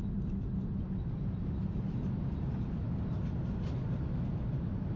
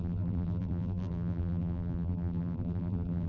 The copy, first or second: second